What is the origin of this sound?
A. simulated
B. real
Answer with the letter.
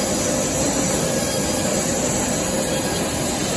B